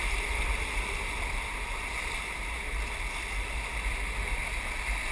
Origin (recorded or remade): recorded